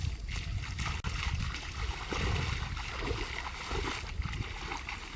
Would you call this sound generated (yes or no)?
no